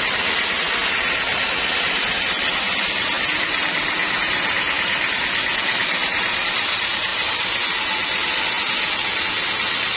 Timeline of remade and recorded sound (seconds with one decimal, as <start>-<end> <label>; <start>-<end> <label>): 0.0-10.0 recorded